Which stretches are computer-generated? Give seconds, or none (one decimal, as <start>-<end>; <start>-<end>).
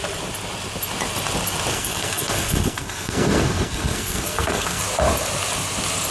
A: 1.7-4.8